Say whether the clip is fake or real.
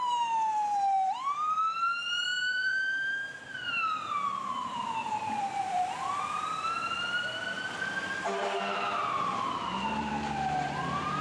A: fake